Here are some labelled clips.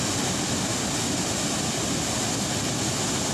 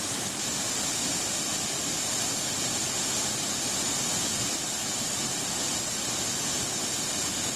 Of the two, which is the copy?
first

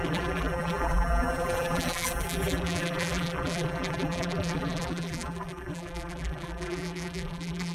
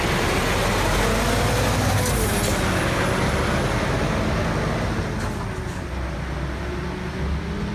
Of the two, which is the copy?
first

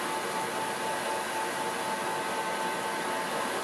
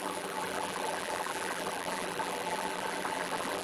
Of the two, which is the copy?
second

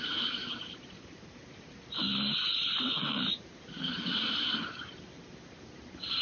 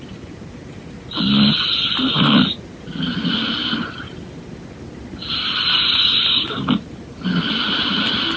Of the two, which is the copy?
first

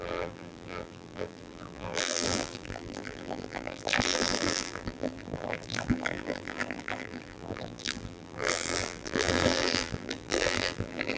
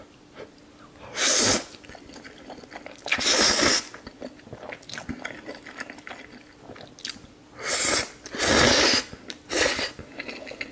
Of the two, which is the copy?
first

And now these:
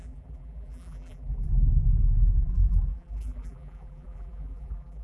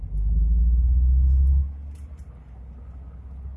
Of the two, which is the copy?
first